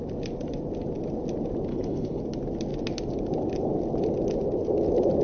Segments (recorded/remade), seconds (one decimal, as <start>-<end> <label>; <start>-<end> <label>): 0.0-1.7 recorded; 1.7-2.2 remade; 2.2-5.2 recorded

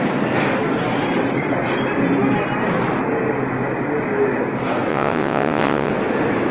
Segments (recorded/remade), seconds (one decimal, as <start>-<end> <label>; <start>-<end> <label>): 0.0-4.9 recorded; 4.9-5.9 remade; 5.9-6.5 recorded

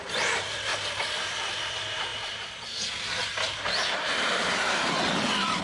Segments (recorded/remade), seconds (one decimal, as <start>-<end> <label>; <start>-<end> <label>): 0.0-0.7 recorded; 0.7-1.6 remade; 1.6-2.1 recorded; 2.1-5.6 remade

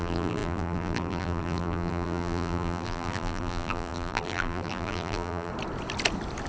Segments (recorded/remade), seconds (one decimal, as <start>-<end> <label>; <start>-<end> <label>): 0.0-5.5 remade; 5.5-6.5 recorded